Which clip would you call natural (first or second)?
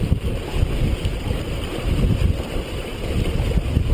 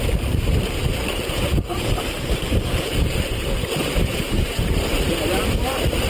first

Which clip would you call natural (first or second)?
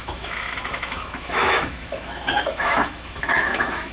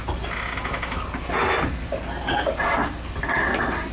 second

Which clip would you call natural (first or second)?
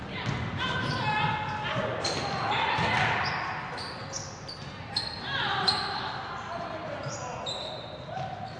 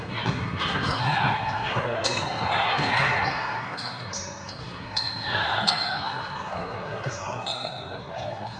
first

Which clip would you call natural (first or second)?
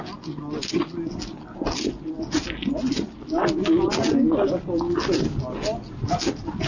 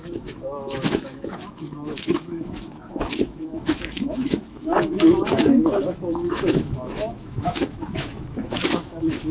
first